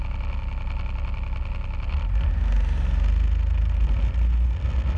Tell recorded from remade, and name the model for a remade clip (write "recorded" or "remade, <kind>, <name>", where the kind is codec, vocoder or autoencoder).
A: recorded